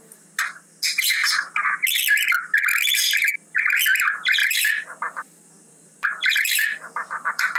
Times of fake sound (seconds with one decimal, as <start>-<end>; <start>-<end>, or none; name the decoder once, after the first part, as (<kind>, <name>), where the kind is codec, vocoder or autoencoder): 4.4-7.6 (vocoder, BigVGAN v2)